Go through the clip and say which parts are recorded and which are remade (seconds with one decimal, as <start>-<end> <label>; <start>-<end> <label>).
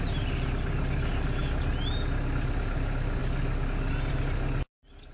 0.0-5.1 recorded